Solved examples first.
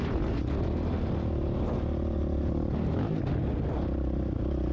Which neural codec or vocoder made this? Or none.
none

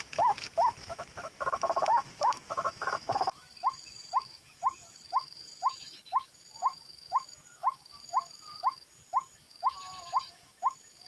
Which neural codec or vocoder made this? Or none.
autoencoder, DAC-VAE